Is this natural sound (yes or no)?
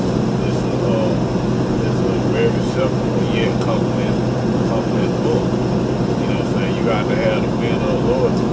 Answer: yes